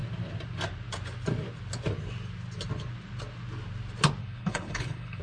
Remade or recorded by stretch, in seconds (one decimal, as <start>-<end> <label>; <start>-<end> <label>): 0.0-4.2 recorded; 4.2-5.2 remade